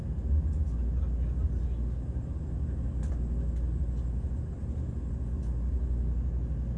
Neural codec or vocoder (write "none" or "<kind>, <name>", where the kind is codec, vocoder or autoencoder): none